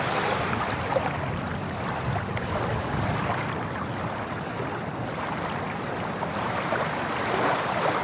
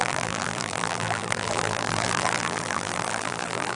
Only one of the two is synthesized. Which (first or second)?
second